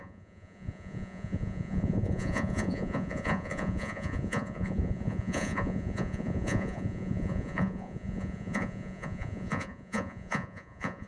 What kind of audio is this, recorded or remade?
remade